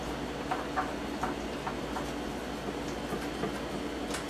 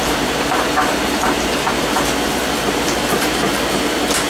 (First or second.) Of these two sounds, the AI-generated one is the second